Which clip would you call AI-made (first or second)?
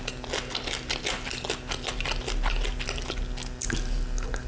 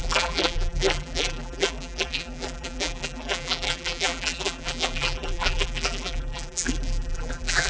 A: second